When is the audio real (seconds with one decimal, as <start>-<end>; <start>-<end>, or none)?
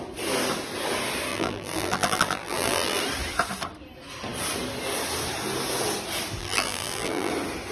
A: 0.0-1.3; 3.0-6.4; 7.3-7.7